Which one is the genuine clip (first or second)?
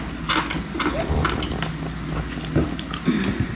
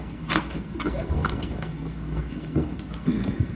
first